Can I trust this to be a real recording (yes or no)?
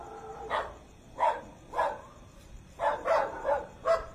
no